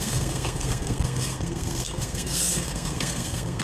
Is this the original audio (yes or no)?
no